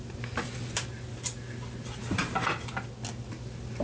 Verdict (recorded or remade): recorded